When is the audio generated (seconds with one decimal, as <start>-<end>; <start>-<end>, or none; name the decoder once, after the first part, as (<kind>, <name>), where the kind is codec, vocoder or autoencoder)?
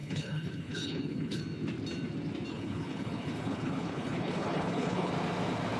0.0-1.4 (codec, HILCodec); 2.5-5.1